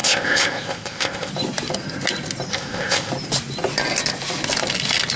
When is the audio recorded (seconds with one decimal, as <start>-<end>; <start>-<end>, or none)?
1.3-2.5; 3.1-5.2